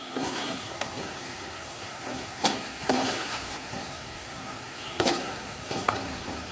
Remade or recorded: remade